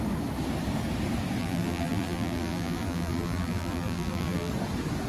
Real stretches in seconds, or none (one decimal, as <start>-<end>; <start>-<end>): 0.0-1.4; 4.5-5.1